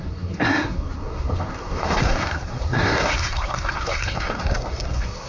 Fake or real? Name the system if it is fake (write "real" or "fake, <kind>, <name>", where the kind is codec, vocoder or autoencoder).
fake, codec, SNAC